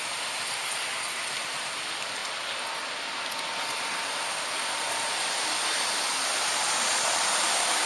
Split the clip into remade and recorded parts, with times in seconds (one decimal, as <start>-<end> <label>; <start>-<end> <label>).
0.0-7.9 recorded